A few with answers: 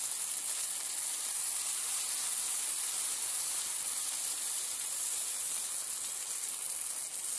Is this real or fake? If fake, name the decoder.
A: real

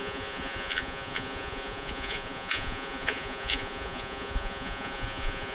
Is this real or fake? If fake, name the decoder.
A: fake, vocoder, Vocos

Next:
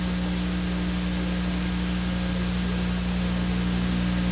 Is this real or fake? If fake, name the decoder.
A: real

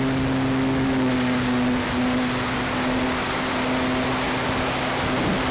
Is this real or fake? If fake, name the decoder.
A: real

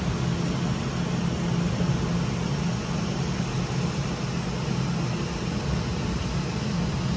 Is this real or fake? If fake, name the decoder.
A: real